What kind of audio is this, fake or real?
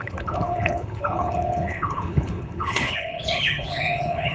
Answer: fake